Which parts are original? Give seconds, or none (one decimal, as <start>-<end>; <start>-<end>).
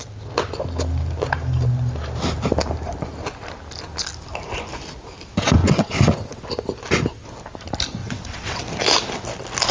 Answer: 0.0-5.6; 6.4-8.0; 8.6-9.7